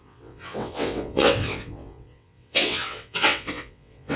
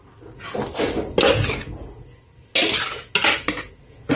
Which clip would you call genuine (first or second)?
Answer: second